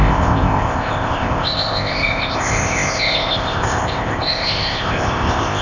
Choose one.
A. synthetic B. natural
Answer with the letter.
A